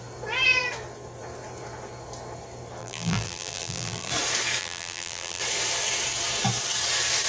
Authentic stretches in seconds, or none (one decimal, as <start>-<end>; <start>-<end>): 0.0-2.8; 4.1-4.6; 5.4-7.3